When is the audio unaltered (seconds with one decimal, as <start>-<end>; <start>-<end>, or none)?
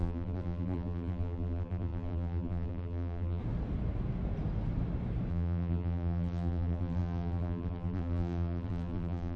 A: 3.4-5.3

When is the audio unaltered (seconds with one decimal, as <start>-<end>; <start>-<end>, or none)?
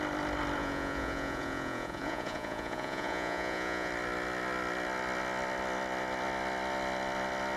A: 0.0-0.6; 3.9-7.6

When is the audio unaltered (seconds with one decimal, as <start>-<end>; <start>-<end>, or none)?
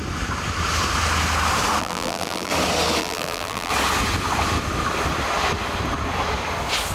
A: 0.0-1.8; 2.5-3.0; 3.7-6.9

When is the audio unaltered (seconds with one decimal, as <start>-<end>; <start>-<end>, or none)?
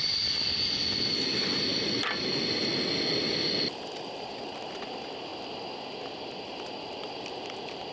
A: 0.0-7.9